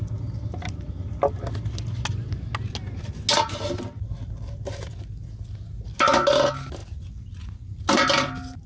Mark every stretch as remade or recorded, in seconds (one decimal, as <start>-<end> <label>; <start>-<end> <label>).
0.0-8.7 recorded